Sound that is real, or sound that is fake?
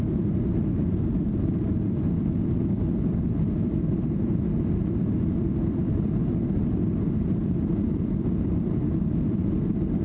real